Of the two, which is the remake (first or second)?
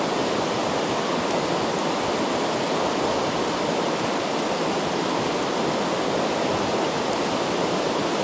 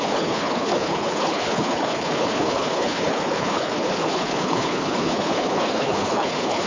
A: second